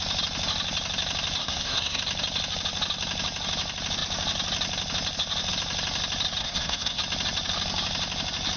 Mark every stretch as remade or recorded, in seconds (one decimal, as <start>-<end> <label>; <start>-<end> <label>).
0.0-1.4 recorded; 1.4-2.0 remade; 2.0-6.4 recorded; 6.4-7.0 remade; 7.0-8.6 recorded